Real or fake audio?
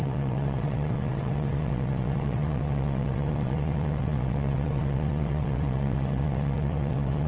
fake